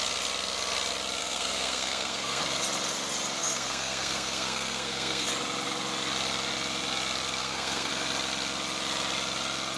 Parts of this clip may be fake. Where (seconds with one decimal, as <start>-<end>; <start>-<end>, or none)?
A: 1.2-2.4; 3.4-5.3; 7.4-7.9